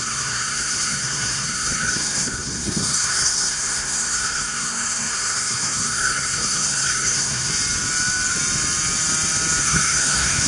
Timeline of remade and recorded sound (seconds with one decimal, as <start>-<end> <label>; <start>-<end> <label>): 0.0-7.5 remade; 7.5-9.6 recorded; 9.6-10.5 remade